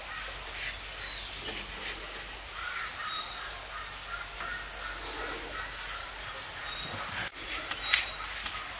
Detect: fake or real real